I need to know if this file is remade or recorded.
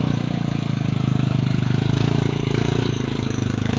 remade